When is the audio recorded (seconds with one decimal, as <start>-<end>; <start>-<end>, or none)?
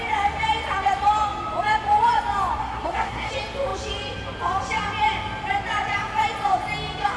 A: 0.0-2.6; 3.3-7.2